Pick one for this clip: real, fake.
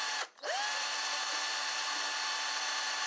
fake